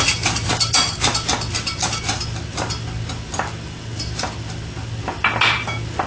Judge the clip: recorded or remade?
recorded